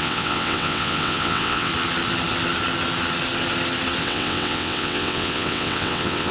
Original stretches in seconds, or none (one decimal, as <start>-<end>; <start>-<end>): 1.7-4.0